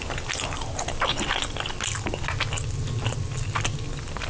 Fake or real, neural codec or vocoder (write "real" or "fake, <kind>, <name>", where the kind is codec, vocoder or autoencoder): real